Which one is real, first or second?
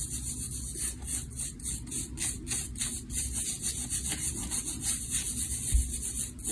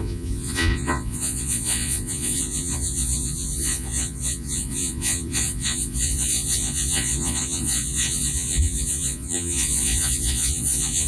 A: first